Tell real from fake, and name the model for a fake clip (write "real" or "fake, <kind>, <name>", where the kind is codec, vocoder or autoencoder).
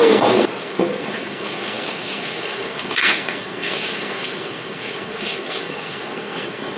fake, codec, SNAC